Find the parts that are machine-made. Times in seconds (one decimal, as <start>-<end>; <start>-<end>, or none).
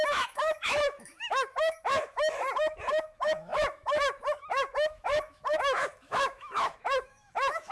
0.0-7.7